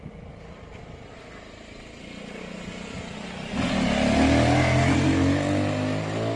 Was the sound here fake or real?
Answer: real